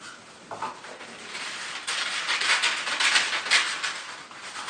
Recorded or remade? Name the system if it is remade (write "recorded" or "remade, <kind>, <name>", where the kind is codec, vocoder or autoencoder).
recorded